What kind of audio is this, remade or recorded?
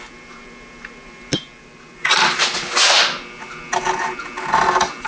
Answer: recorded